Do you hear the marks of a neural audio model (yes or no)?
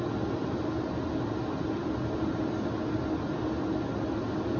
no